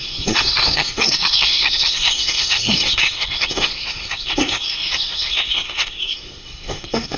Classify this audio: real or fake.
fake